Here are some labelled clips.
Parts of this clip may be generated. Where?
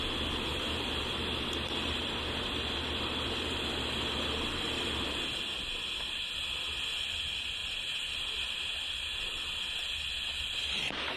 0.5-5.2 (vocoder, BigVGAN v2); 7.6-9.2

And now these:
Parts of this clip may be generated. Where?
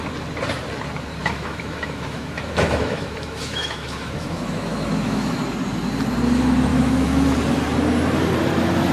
1.2-5.4 (autoencoder, DAC-VAE); 6.7-7.3